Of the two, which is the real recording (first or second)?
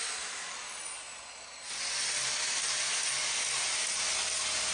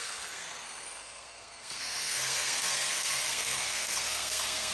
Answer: first